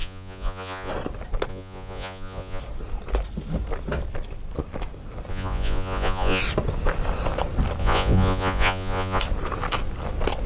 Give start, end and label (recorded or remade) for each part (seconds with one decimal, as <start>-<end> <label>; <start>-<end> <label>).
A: 0.0-0.9 remade; 0.9-1.5 recorded; 1.5-2.6 remade; 2.6-5.3 recorded; 5.3-6.4 remade; 6.4-7.8 recorded; 7.8-9.2 remade; 9.2-10.5 recorded